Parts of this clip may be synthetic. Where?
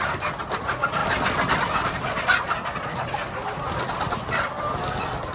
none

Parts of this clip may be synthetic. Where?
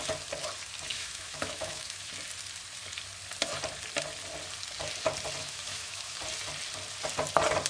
0.9-2.1; 5.4-6.2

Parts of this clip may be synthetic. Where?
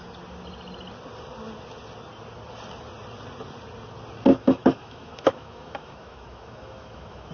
4.3-7.3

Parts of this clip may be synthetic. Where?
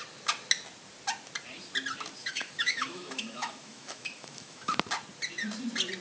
2.2-4.7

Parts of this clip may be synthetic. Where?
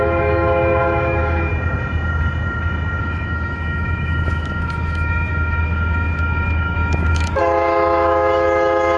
0.0-1.5; 3.0-9.0